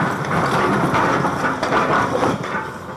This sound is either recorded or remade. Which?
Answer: remade